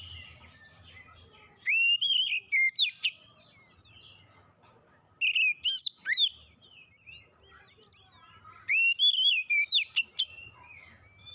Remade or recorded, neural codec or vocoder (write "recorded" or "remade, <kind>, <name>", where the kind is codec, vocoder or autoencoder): recorded